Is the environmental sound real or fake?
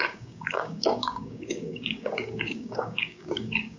fake